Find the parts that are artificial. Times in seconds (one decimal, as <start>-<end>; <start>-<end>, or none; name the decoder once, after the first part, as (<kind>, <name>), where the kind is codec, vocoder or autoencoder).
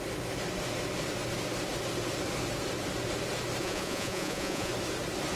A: 3.6-4.7 (vocoder, Vocos)